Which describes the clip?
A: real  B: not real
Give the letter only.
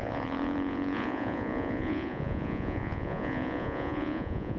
B